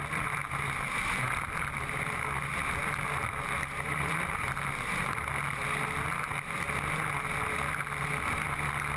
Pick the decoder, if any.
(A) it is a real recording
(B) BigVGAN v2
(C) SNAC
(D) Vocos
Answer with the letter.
A